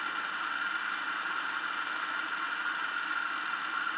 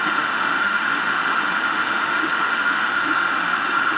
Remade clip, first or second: second